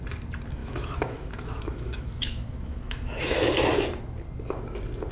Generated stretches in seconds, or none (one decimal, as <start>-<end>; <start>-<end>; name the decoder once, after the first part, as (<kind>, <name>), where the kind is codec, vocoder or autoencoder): 0.6-3.7 (autoencoder, DAC-VAE)